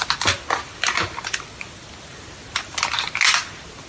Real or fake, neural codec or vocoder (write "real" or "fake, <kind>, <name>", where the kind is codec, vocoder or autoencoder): real